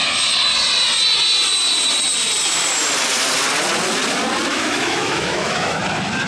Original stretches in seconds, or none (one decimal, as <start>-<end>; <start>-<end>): 0.0-4.5; 5.8-6.3